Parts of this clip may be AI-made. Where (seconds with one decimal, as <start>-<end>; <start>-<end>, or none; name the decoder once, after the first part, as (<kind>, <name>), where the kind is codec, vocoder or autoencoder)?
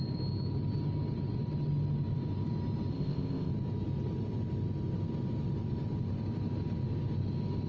2.9-3.5 (codec, ZipCodec)